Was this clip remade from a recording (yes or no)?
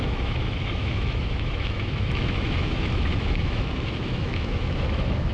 yes